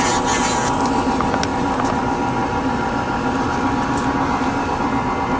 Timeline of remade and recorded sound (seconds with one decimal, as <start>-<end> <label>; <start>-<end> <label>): 0.0-5.4 recorded